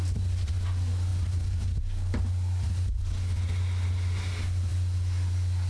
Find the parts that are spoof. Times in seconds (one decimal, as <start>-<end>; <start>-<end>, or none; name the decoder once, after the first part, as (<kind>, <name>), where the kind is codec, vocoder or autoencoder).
none